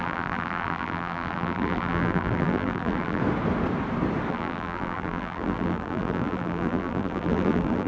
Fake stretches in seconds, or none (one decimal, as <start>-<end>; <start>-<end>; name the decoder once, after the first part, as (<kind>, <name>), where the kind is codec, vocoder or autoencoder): 0.0-3.2 (vocoder, BigVGAN v2); 4.3-7.9